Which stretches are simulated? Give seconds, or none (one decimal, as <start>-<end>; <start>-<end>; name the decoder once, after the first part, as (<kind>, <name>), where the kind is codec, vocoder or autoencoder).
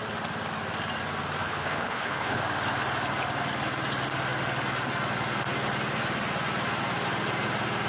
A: 1.4-2.4 (codec, HILCodec)